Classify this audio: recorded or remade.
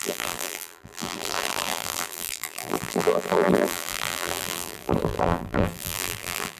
remade